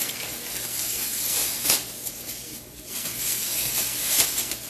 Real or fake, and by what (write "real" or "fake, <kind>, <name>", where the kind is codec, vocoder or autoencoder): fake, codec, SNAC